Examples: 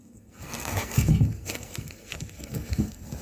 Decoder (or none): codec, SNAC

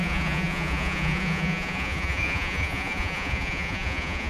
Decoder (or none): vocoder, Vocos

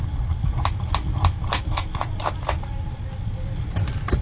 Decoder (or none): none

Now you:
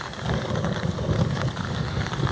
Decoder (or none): codec, DAC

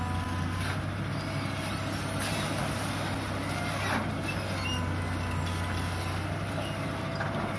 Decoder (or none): none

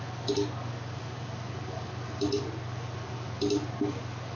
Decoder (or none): none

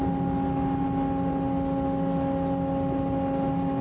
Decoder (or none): none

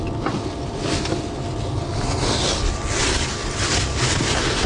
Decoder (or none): none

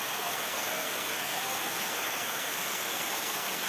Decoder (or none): codec, SNAC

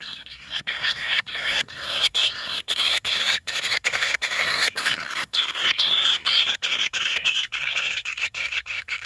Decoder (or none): codec, SNAC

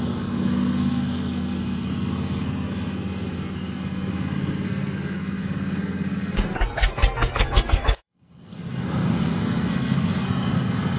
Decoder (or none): codec, SNAC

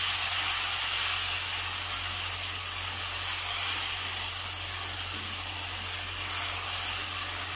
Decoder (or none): none